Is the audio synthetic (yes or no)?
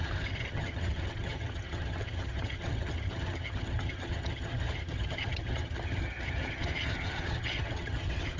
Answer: yes